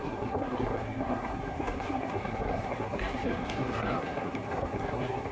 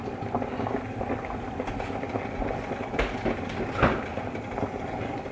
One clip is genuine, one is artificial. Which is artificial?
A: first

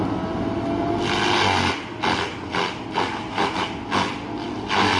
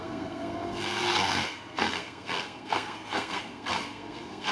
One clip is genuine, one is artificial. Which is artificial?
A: second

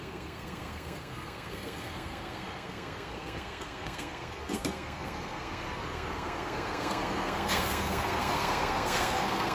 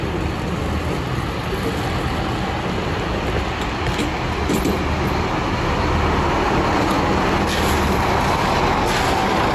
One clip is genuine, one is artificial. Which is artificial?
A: first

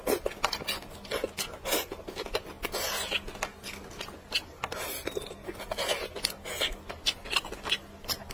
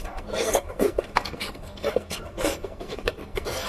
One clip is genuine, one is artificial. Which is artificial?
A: second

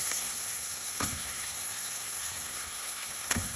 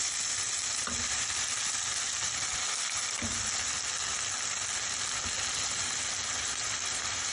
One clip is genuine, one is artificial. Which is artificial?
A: first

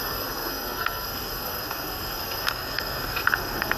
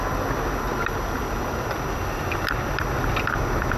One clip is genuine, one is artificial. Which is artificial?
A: first